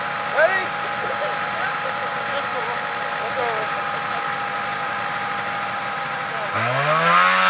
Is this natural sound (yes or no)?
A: yes